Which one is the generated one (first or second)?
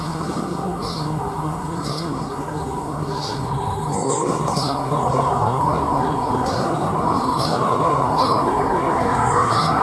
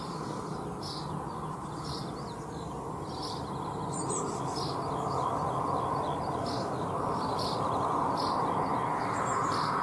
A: first